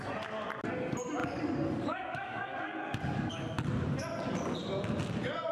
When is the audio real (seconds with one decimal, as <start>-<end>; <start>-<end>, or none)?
0.0-1.2; 3.3-5.5